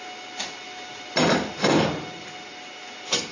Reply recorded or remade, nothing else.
recorded